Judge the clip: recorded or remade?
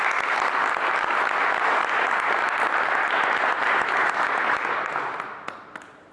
recorded